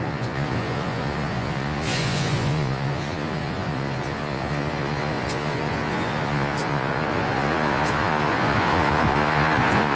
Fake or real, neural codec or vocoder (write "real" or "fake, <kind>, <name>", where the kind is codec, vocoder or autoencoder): fake, vocoder, Vocos